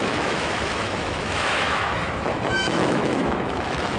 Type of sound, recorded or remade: remade